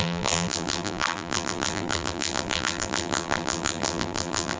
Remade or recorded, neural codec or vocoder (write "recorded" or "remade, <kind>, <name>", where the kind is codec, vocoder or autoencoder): remade, vocoder, BigVGAN v2